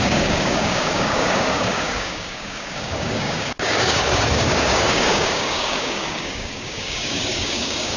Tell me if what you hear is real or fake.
fake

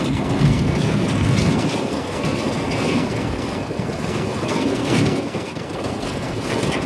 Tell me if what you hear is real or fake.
fake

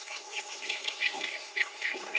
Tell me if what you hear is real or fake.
fake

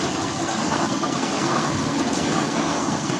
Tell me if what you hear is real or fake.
fake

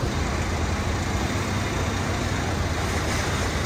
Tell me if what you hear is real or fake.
real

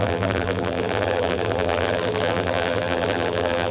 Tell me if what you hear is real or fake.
fake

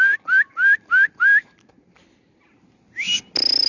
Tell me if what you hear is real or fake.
real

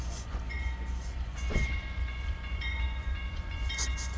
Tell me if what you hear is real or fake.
fake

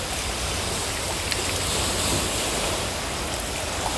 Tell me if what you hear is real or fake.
real